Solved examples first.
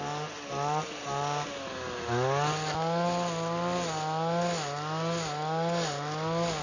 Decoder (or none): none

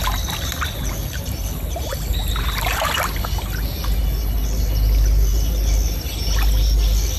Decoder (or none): none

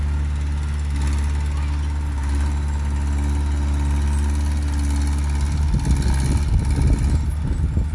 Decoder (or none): none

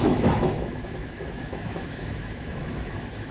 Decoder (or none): autoencoder, DAC-VAE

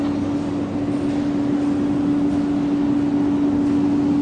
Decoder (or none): none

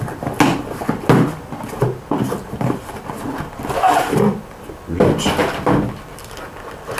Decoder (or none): none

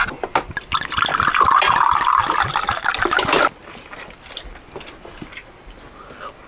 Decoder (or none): none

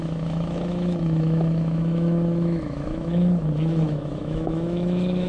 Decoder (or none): autoencoder, DAC-VAE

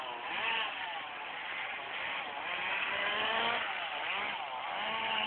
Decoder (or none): none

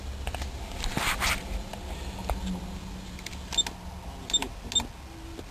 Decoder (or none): none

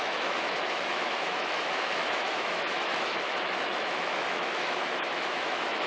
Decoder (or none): autoencoder, DAC-VAE